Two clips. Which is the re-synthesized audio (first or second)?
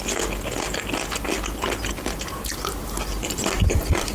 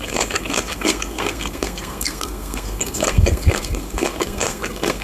second